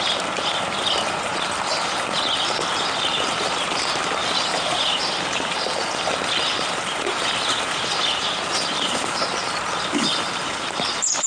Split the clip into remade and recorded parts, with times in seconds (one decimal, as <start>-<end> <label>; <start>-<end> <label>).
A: 0.0-11.3 recorded